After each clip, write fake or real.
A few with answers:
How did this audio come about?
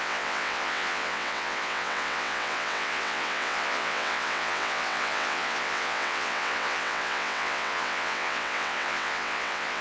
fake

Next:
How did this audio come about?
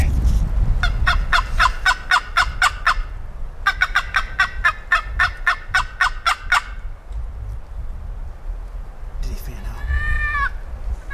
real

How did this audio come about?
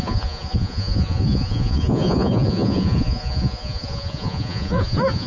fake